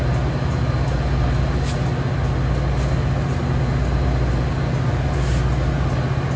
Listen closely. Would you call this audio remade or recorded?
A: recorded